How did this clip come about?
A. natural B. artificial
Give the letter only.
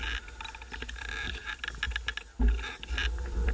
A